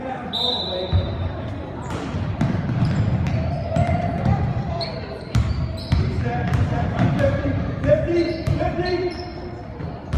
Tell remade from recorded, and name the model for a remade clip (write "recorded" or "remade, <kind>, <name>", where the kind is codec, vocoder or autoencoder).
remade, vocoder, BigVGAN v2